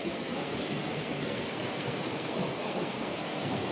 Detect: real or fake fake